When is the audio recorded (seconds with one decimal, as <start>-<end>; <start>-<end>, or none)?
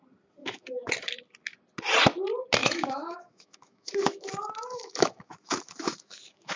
0.0-0.4; 0.9-2.6